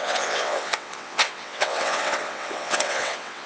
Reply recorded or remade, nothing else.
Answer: remade